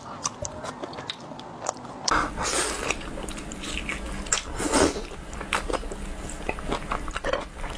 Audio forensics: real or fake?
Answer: real